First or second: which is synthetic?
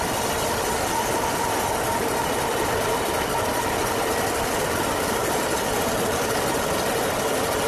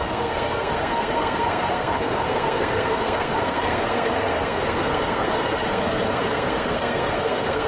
second